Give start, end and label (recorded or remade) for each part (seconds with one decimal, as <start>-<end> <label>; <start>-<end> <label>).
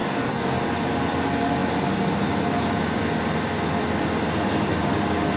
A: 0.0-0.6 remade; 0.6-5.4 recorded